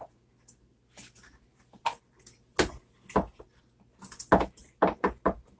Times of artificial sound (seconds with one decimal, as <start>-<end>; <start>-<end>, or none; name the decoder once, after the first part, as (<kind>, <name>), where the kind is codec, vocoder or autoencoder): 1.5-2.7 (vocoder, BigVGAN v2); 4.6-5.6